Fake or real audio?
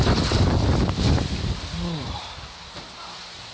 fake